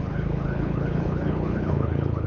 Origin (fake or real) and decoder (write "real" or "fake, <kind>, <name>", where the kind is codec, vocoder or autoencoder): fake, codec, HILCodec